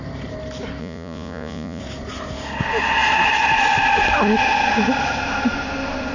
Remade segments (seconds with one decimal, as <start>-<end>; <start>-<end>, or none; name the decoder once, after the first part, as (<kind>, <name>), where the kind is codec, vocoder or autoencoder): 0.8-1.8 (vocoder, Vocos)